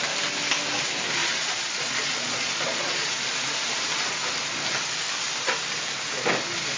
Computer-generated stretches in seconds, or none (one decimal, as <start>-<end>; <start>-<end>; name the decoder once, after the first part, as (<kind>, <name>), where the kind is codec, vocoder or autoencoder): 1.2-3.1 (vocoder, Vocos)